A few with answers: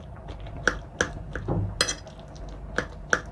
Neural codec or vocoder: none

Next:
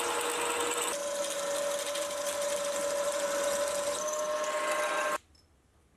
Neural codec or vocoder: none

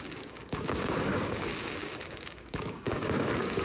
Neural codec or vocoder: codec, DAC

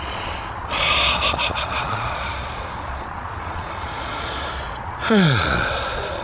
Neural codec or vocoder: vocoder, Vocos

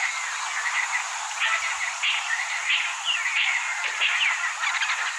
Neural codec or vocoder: none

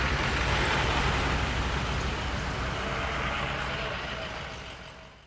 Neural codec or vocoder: none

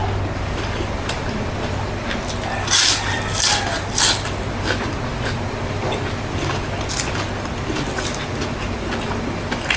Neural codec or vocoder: none